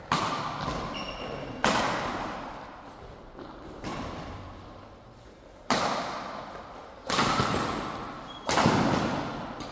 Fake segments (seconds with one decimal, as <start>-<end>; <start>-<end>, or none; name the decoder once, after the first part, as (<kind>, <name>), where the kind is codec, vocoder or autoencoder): none